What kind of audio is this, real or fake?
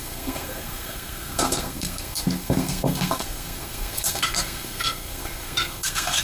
fake